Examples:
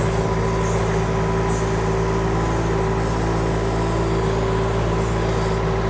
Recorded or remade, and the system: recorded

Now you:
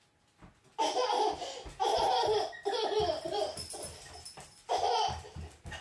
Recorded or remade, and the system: recorded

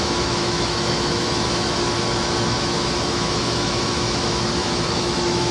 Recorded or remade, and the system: remade, autoencoder, DAC-VAE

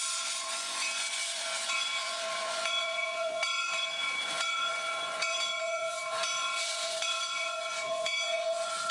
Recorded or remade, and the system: remade, vocoder, Vocos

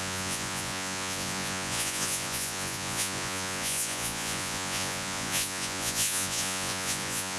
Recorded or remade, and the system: remade, vocoder, Vocos